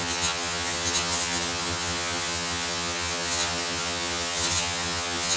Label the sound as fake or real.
fake